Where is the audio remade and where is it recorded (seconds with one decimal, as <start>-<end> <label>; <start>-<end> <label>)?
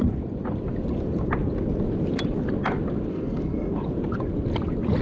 0.0-3.1 recorded; 3.1-3.7 remade; 3.7-5.0 recorded